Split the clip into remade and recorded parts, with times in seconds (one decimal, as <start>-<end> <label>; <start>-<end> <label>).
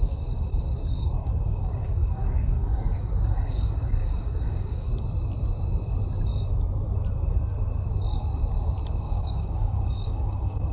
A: 0.0-4.9 remade; 4.9-8.9 recorded; 8.9-10.7 remade